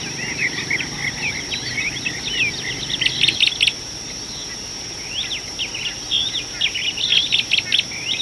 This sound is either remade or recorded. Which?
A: recorded